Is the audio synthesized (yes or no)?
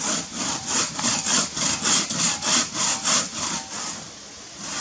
no